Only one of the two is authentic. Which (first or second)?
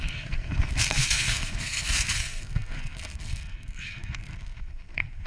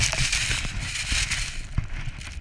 second